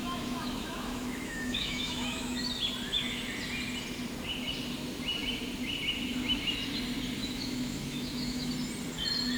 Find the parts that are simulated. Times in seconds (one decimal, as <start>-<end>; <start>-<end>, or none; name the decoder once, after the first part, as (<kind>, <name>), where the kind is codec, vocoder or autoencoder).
0.0-2.4 (autoencoder, DAC-VAE); 7.2-8.5